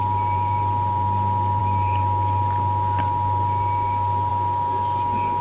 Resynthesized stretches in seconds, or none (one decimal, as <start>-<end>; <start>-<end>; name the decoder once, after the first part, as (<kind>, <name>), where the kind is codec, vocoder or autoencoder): none